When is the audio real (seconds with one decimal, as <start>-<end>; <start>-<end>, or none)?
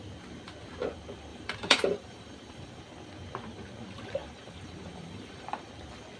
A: 0.0-1.3; 2.8-4.2; 5.7-6.2